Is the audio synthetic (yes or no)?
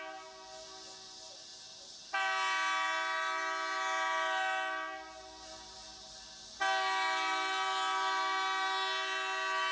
no